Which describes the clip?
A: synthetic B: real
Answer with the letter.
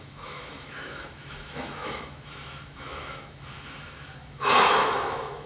A